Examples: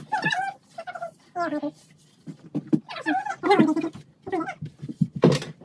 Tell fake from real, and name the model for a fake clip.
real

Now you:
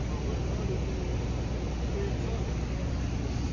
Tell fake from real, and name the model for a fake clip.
real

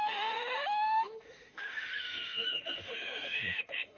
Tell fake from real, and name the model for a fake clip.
fake, autoencoder, DAC-VAE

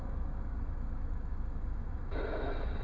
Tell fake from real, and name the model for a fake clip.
fake, autoencoder, DAC-VAE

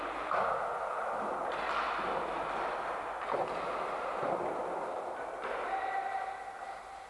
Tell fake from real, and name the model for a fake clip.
real